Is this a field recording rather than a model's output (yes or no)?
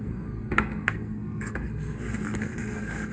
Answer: no